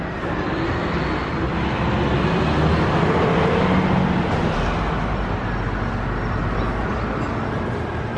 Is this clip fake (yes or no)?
no